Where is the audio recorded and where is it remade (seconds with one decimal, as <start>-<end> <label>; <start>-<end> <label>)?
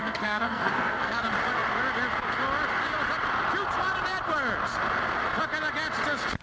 0.0-1.2 remade; 1.2-6.4 recorded